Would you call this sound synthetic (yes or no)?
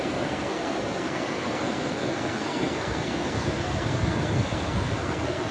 yes